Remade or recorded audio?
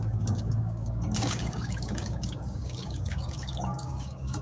remade